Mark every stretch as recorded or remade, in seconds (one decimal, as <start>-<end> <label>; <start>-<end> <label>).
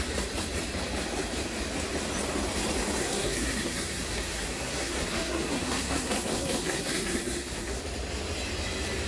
0.0-3.0 recorded; 3.0-7.8 remade; 7.8-9.1 recorded